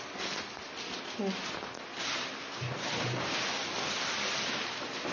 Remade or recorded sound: recorded